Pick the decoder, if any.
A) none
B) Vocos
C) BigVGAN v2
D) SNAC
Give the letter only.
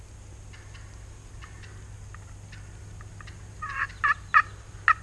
A